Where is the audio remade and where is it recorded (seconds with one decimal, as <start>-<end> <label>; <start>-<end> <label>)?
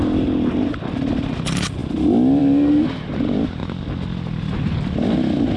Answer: 0.0-5.6 recorded